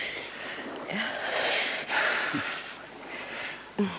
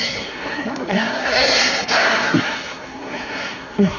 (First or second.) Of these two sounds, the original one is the first